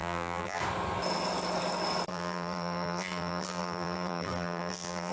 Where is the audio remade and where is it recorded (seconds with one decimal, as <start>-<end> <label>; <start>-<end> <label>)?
0.0-0.6 remade; 0.6-2.1 recorded; 2.1-5.1 remade